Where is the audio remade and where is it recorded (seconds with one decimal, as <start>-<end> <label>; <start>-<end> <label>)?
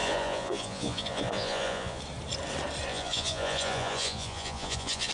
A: 0.0-2.0 remade; 2.0-2.9 recorded; 2.9-5.1 remade